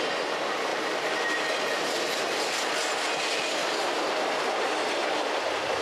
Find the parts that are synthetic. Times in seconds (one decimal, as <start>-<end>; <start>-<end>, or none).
0.7-1.4